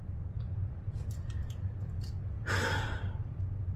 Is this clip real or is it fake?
real